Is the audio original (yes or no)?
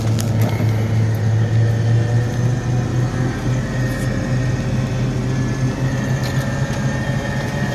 yes